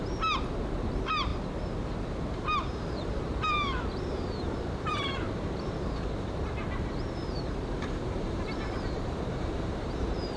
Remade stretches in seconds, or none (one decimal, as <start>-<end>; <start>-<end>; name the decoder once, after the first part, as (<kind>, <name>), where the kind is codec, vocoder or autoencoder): 0.0-10.4 (vocoder, BigVGAN v2)